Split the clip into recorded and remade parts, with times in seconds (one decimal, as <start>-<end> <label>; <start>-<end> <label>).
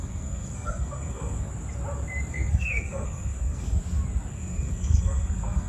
0.0-1.5 remade; 1.5-2.3 recorded; 2.3-3.8 remade; 3.8-4.3 recorded; 4.3-5.7 remade